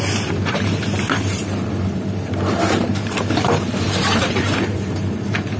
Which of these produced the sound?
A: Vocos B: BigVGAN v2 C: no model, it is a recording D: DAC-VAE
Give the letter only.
B